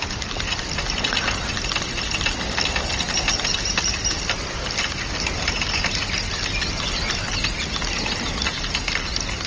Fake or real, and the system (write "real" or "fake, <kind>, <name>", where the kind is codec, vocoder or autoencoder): real